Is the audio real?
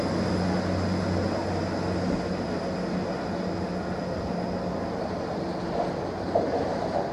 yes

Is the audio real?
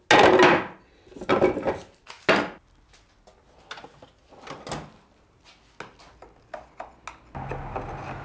yes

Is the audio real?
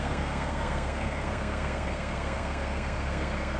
no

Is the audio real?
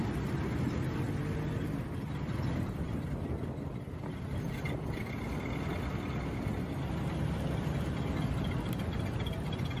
yes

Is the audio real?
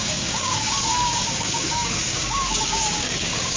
no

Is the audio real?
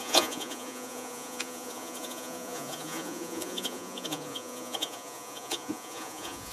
no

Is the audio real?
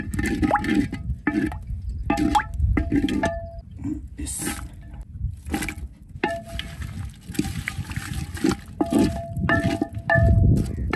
yes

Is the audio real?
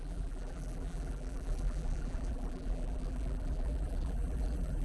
no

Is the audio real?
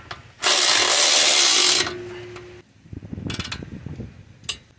yes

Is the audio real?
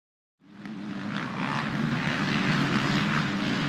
yes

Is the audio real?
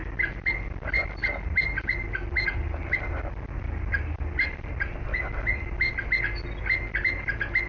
yes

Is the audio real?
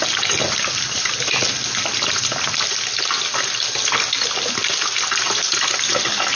yes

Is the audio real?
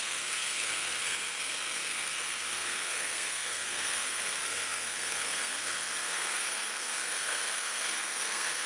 no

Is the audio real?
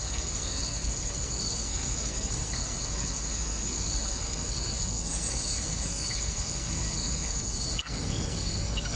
no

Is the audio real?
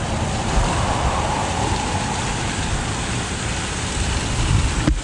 yes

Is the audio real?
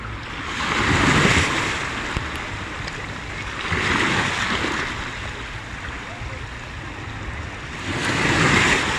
yes